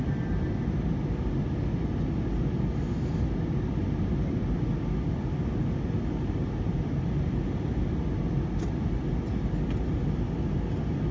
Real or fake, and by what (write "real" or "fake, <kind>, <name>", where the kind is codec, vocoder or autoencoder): real